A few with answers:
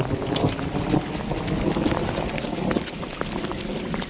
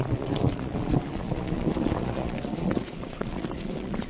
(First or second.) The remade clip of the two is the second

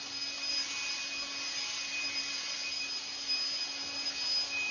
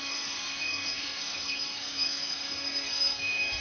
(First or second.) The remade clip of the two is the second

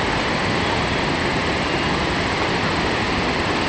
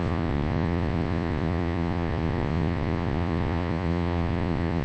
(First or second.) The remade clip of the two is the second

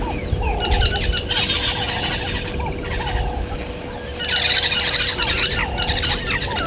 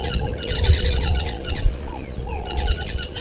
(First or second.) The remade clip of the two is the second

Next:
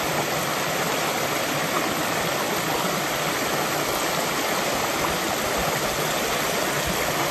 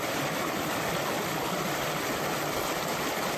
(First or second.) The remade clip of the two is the second